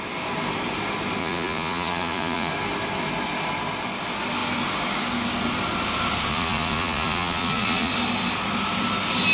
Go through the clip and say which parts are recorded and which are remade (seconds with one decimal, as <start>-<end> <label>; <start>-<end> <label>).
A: 0.0-1.2 recorded; 1.2-2.5 remade; 2.5-6.3 recorded; 6.3-7.9 remade; 7.9-9.3 recorded